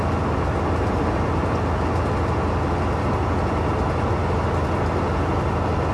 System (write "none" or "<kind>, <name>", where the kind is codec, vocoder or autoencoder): none